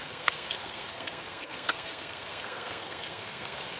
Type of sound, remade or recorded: remade